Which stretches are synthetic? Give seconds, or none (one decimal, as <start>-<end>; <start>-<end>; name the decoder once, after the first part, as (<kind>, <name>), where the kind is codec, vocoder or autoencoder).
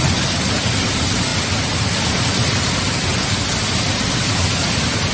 none